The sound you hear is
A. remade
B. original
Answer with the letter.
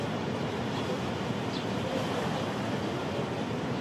B